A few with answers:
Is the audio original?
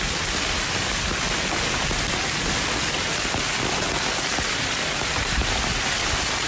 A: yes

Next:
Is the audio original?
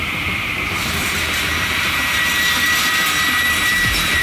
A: no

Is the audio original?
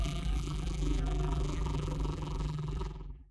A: no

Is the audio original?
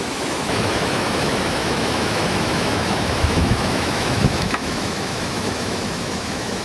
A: no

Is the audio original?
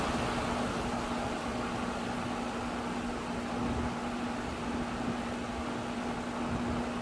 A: yes